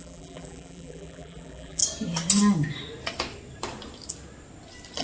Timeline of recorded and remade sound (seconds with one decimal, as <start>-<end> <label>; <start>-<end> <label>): 0.0-1.8 remade; 1.8-5.0 recorded